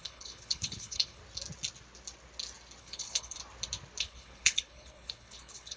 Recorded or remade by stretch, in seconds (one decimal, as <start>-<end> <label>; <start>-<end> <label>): 0.0-1.2 remade; 1.2-2.8 recorded; 2.8-3.4 remade; 3.4-4.0 recorded; 4.0-5.8 remade